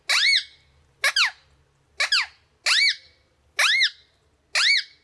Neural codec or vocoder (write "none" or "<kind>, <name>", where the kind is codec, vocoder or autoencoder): none